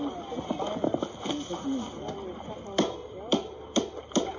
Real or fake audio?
real